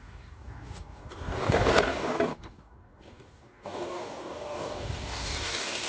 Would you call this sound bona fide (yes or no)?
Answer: no